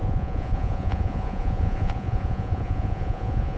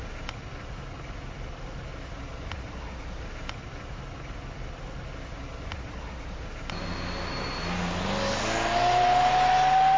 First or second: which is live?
second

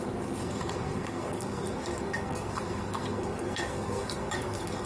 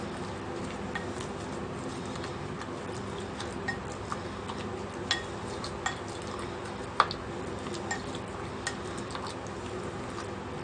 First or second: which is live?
second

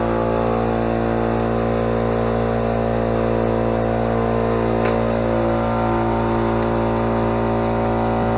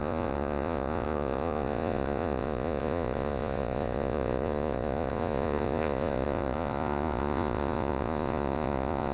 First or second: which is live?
first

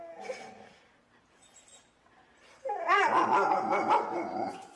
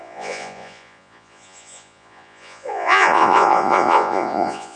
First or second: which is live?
first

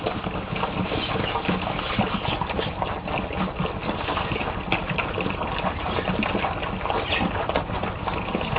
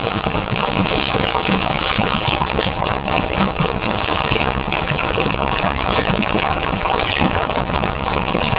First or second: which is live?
first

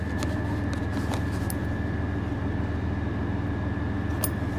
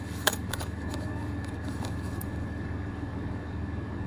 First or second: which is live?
first